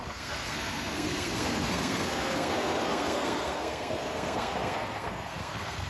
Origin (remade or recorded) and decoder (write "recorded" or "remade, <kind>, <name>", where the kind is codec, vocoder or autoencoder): remade, codec, SNAC